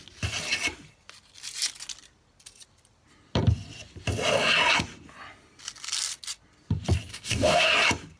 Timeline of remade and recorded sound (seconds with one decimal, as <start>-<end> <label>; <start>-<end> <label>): 0.0-7.1 recorded; 7.1-7.7 remade; 7.7-8.2 recorded